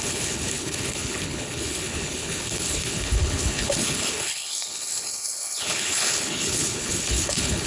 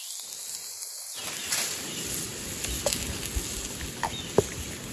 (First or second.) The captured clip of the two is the second